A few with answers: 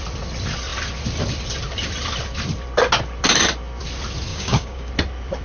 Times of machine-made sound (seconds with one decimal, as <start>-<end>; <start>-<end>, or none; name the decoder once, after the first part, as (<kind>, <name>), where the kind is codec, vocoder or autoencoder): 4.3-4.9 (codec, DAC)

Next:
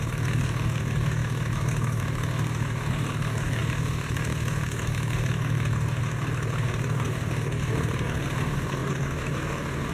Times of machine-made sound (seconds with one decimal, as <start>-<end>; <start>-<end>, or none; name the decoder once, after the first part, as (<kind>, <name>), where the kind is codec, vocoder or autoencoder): 0.0-9.9 (codec, DAC)

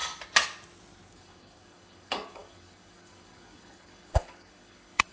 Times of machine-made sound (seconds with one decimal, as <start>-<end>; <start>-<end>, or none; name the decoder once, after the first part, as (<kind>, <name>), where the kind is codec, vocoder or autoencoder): 1.1-5.1 (codec, DAC)

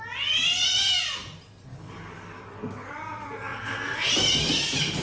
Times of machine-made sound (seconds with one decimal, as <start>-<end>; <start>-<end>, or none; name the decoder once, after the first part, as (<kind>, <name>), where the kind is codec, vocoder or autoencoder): 1.7-2.9 (codec, DAC)

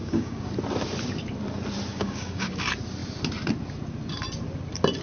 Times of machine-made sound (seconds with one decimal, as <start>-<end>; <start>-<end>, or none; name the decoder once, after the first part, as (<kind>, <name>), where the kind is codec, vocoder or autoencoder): 0.0-0.5 (codec, DAC); 1.9-2.5